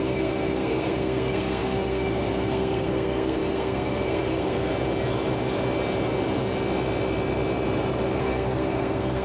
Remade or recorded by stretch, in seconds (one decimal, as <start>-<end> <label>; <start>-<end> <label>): 0.0-4.7 remade; 4.7-8.2 recorded; 8.2-9.2 remade